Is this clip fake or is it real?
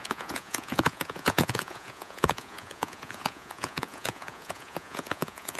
fake